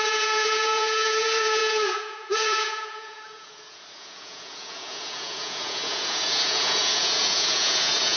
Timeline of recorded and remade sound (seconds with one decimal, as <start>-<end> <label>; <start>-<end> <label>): 0.0-8.2 remade